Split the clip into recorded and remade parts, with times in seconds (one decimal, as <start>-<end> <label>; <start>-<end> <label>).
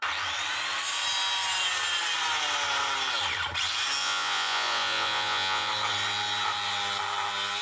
0.0-4.0 recorded; 4.0-5.7 remade; 5.7-7.6 recorded